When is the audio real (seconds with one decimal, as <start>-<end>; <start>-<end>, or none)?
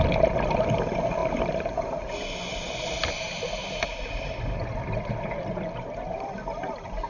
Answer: 0.0-7.1